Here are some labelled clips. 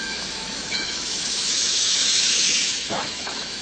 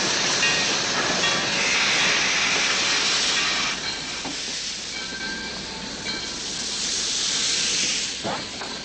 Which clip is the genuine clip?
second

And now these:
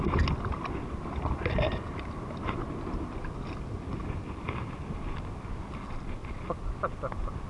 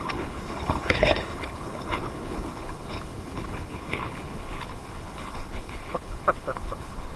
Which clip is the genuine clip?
first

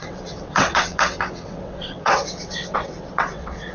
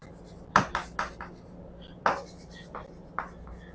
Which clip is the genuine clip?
second